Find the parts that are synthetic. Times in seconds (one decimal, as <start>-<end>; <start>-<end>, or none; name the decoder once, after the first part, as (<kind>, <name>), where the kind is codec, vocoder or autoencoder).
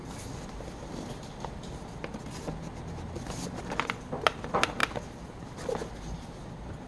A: none